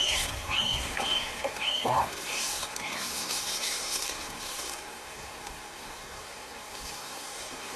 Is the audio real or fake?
fake